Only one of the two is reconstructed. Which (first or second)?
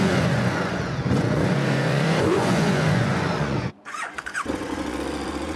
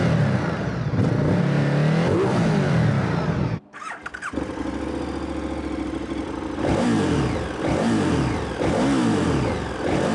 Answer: first